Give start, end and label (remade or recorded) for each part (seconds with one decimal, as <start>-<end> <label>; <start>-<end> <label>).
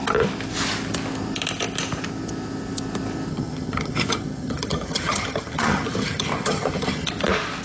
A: 0.0-3.3 recorded; 3.3-7.1 remade; 7.1-7.6 recorded